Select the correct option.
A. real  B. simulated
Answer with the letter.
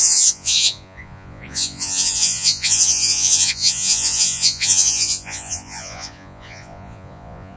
B